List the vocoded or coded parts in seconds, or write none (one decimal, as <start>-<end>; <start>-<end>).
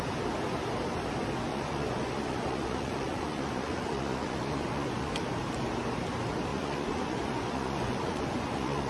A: 1.5-5.1; 6.5-8.9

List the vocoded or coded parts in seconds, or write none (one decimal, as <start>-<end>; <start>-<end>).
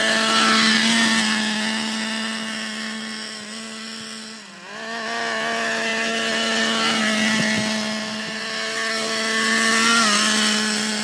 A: none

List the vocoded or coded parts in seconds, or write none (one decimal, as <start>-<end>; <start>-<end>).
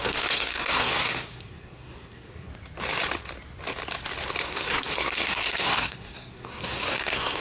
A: 0.0-2.5; 4.4-7.4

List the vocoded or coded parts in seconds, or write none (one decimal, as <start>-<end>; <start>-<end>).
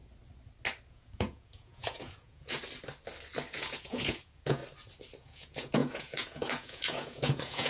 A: 0.9-2.6; 3.5-4.6; 5.2-7.7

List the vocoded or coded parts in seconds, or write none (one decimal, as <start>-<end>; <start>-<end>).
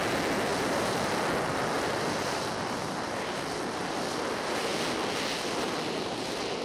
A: 0.5-3.8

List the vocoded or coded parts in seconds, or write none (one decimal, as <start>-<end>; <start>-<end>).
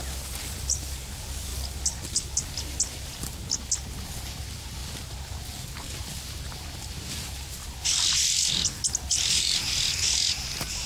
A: none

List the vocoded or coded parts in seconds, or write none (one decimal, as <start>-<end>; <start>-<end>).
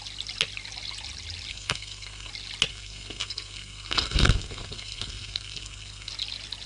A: 1.5-2.3; 2.7-6.1